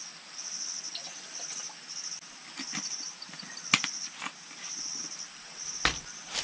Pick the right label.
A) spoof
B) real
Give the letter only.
B